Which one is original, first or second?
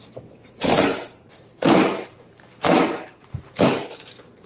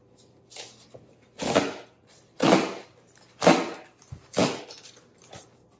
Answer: second